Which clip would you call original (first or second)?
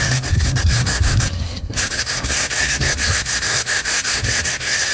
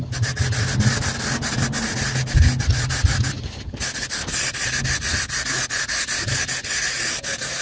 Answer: second